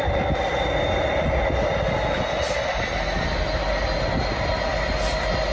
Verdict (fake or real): real